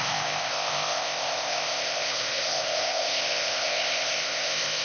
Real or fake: fake